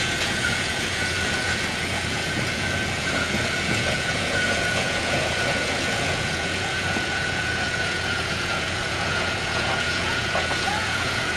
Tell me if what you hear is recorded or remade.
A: remade